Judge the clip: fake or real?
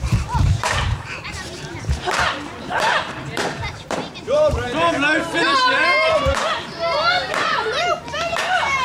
fake